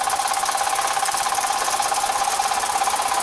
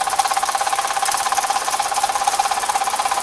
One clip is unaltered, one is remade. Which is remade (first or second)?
second